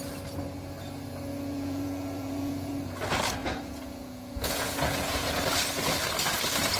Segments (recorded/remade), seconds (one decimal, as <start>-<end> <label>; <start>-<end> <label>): 0.0-1.3 recorded; 1.3-2.7 remade; 2.7-3.4 recorded; 3.4-5.4 remade; 5.4-6.8 recorded